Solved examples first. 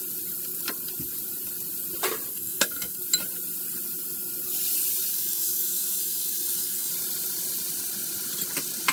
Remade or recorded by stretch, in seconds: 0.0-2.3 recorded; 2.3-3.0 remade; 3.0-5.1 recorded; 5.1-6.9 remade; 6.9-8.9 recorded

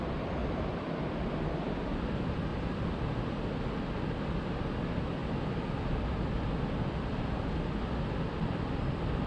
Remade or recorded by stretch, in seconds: 0.0-9.3 recorded

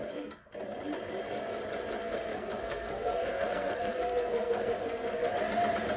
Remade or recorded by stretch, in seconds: 0.0-0.5 remade; 0.5-2.0 recorded; 2.0-5.3 remade; 5.3-6.0 recorded

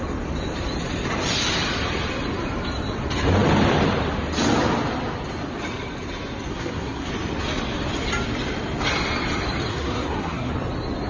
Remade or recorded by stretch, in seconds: 0.0-6.5 recorded; 6.5-7.1 remade; 7.1-9.7 recorded; 9.7-10.5 remade; 10.5-11.1 recorded

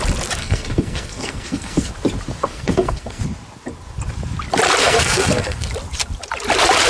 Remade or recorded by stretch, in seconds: 0.0-0.4 recorded; 0.4-1.9 remade; 1.9-2.4 recorded; 2.4-3.2 remade; 3.2-4.8 recorded; 4.8-5.7 remade; 5.7-6.9 recorded

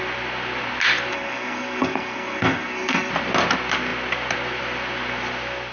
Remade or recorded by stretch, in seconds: 0.0-1.1 recorded; 1.1-3.1 remade; 3.1-5.7 recorded